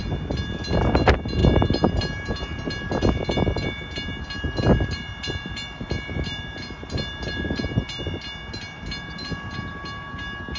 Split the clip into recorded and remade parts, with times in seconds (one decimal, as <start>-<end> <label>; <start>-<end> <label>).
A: 0.0-10.6 recorded